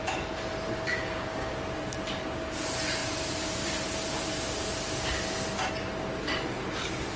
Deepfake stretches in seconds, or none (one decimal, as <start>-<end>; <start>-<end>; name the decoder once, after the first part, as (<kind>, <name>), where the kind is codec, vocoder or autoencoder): 0.9-1.5 (codec, DAC)